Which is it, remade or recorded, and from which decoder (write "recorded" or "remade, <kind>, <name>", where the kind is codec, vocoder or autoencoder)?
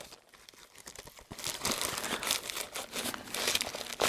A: recorded